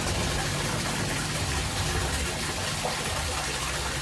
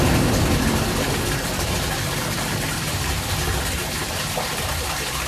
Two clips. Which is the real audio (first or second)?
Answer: first